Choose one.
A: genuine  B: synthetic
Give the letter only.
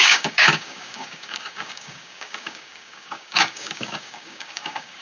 B